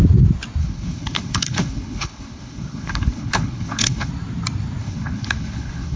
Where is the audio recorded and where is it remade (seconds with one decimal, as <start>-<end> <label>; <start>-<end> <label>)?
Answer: 0.0-0.6 recorded; 0.6-4.1 remade; 4.1-4.8 recorded; 4.8-6.0 remade